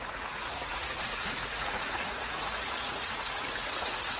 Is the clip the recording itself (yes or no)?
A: no